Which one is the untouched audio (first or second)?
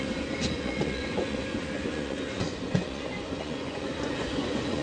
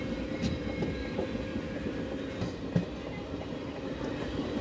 second